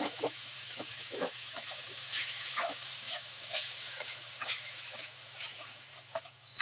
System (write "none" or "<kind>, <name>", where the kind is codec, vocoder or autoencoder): autoencoder, DAC-VAE